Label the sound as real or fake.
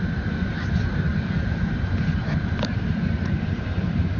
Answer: fake